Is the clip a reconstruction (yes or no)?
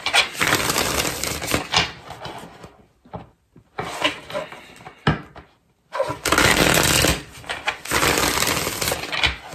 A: no